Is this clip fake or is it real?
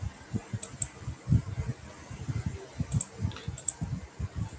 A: real